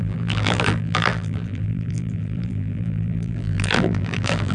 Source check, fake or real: fake